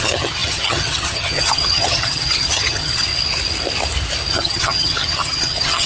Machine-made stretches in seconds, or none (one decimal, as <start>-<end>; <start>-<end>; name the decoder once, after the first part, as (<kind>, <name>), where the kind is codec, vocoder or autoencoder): 0.0-3.1 (vocoder, HiFi-GAN); 4.3-5.9